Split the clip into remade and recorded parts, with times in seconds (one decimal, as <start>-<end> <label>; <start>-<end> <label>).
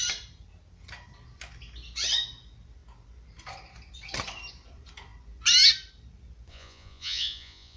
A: 0.0-6.5 recorded; 6.5-7.8 remade